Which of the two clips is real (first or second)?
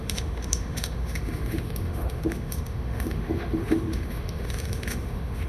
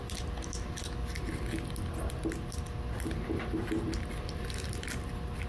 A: second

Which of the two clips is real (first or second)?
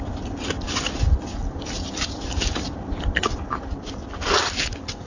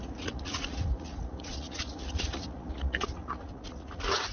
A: first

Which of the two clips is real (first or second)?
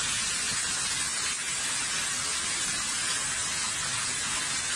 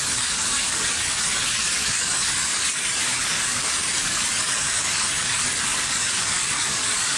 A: first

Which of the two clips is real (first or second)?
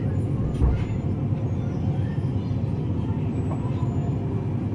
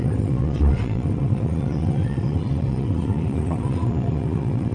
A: first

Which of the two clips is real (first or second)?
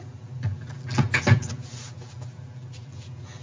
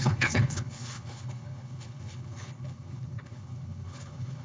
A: first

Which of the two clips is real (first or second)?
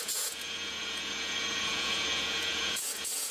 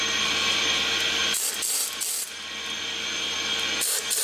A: second